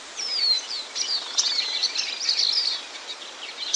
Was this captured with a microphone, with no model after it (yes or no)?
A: yes